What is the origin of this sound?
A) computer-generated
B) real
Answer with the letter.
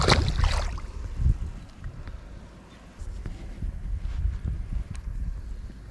B